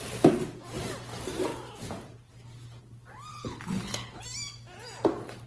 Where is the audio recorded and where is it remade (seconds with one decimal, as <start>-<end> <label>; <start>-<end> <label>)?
0.0-3.3 recorded; 3.3-4.2 remade; 4.2-5.5 recorded